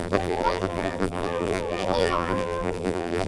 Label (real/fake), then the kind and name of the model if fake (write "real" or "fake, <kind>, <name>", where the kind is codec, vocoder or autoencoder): fake, vocoder, BigVGAN v2